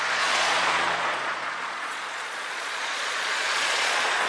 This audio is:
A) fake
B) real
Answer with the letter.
A